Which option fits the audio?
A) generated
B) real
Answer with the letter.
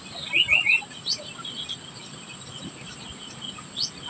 B